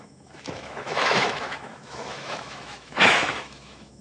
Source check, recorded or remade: remade